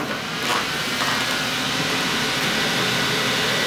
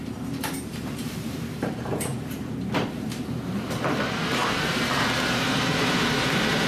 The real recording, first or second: first